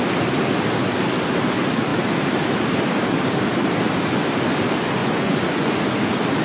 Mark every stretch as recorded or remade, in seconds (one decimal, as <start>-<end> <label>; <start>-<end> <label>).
0.0-5.0 recorded; 5.0-5.7 remade; 5.7-6.4 recorded